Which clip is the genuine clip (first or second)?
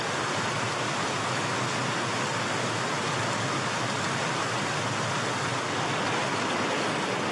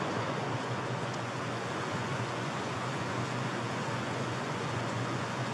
first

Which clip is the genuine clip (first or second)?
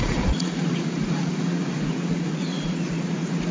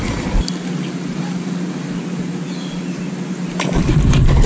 second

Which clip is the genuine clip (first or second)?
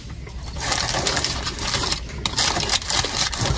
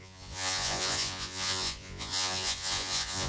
first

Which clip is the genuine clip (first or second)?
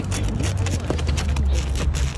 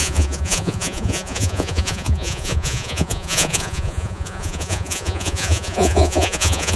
first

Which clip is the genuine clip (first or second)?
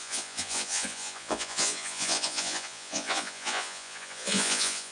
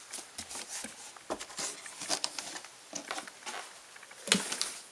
second